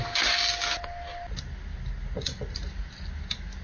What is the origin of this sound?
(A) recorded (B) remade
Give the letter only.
A